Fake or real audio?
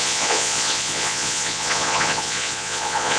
fake